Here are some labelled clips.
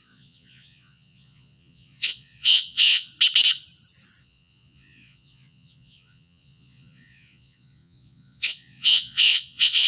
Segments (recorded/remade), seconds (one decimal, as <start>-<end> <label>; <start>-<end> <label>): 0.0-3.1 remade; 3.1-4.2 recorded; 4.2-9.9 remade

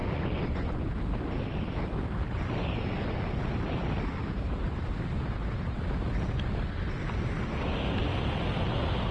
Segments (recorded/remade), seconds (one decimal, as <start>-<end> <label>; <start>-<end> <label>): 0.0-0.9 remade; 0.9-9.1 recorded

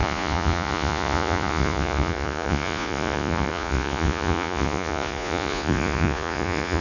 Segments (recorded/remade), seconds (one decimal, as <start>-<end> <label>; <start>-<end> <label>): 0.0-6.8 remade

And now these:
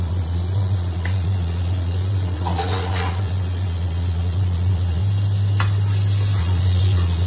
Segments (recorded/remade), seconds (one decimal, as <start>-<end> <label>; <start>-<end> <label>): 0.0-5.0 remade; 5.0-6.4 recorded; 6.4-7.3 remade

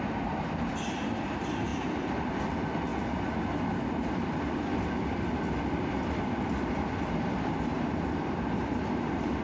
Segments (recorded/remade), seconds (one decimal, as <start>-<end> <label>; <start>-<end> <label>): 0.0-9.4 recorded

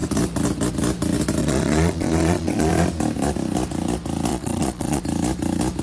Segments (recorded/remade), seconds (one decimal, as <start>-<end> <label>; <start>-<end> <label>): 0.0-1.4 recorded; 1.4-2.7 remade; 2.7-4.3 recorded; 4.3-5.0 remade; 5.0-5.8 recorded

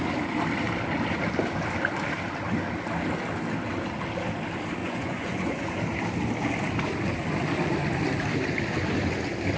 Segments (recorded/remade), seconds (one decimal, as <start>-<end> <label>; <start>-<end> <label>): 0.0-4.8 recorded; 4.8-5.8 remade; 5.8-9.6 recorded